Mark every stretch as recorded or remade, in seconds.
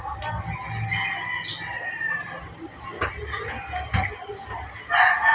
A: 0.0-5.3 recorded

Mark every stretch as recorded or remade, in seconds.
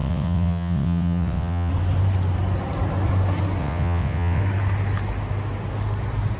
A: 0.0-1.7 remade; 1.7-3.6 recorded; 3.6-4.4 remade; 4.4-6.4 recorded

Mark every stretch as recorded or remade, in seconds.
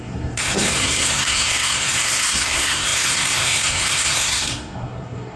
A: 0.0-5.4 remade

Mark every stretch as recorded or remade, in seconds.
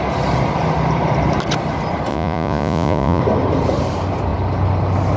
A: 0.0-2.1 recorded; 2.1-3.2 remade; 3.2-5.2 recorded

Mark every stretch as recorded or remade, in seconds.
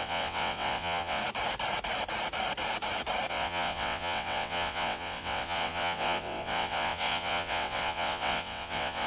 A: 0.0-1.2 remade; 1.2-3.3 recorded; 3.3-9.1 remade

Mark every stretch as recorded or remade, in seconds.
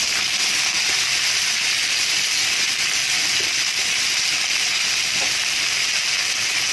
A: 0.0-6.7 recorded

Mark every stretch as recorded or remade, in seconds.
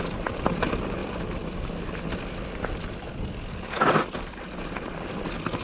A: 0.0-5.6 recorded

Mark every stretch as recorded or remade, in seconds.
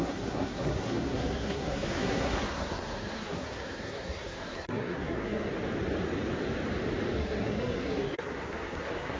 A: 0.0-5.5 remade; 5.5-7.2 recorded; 7.2-9.2 remade